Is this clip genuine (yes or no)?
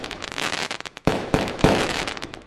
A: no